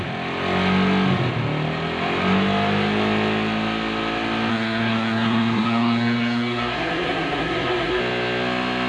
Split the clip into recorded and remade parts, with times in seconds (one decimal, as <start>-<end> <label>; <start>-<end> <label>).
0.0-4.5 recorded; 4.5-8.0 remade; 8.0-8.9 recorded